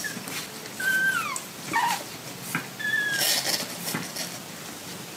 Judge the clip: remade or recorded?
recorded